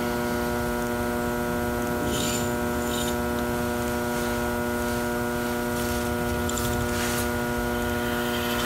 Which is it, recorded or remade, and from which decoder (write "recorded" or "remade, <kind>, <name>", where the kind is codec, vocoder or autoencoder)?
recorded